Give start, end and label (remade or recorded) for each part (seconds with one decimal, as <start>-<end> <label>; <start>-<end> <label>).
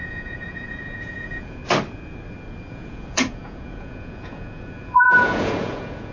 0.0-1.6 remade; 1.6-2.7 recorded; 2.7-6.1 remade